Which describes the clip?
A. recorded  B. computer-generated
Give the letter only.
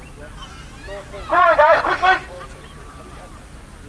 A